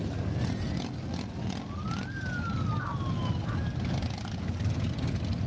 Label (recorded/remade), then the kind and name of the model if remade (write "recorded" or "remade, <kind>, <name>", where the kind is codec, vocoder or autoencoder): recorded